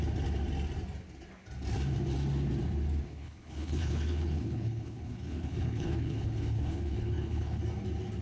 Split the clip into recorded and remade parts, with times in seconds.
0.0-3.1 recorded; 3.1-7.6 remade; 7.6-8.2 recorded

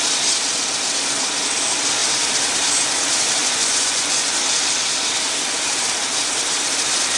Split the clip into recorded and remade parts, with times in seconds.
0.0-3.4 recorded; 3.4-4.4 remade; 4.4-7.2 recorded